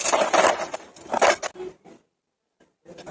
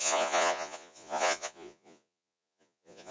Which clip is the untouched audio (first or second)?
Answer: first